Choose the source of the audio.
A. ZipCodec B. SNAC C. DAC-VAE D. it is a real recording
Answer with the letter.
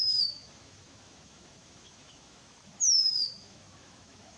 C